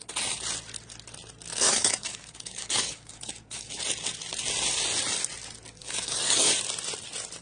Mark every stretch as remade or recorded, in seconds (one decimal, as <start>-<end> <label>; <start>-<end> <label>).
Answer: 0.0-1.5 recorded; 1.5-3.8 remade; 3.8-5.8 recorded; 5.8-6.5 remade; 6.5-7.4 recorded